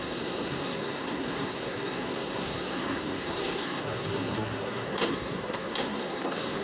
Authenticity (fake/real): fake